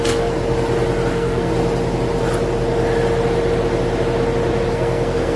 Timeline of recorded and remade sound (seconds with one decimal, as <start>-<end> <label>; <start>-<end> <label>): 0.0-0.4 remade; 0.4-1.1 recorded; 1.1-1.5 remade; 1.5-4.7 recorded; 4.7-5.4 remade